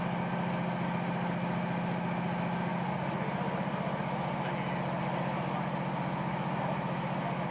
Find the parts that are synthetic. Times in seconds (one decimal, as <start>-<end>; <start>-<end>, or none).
none

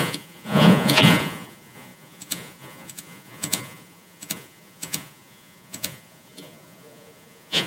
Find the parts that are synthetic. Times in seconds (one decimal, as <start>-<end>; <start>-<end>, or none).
0.0-7.7

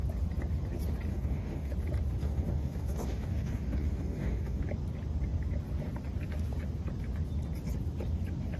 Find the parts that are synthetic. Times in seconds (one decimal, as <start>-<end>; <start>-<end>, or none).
1.1-1.7; 2.2-4.6